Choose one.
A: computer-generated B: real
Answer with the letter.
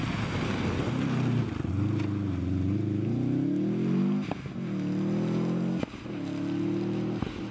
B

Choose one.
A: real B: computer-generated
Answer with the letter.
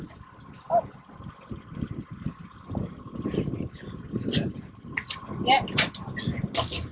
A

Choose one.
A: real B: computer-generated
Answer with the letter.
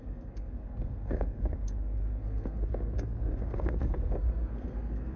B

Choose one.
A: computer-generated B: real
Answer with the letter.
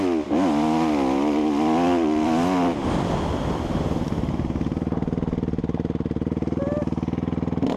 B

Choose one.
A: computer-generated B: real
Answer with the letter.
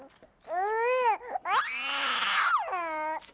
B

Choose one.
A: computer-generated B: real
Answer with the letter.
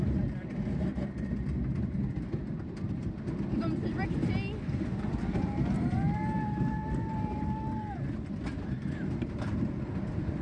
B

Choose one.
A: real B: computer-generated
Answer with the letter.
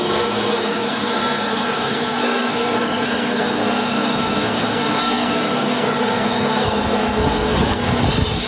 B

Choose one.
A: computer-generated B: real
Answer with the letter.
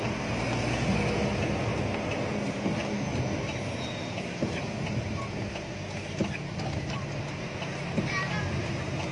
B